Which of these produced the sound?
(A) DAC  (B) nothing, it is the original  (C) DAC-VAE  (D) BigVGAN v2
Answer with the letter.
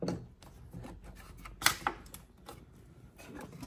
B